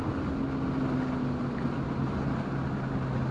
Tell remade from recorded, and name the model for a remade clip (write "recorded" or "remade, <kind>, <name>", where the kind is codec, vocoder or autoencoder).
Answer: recorded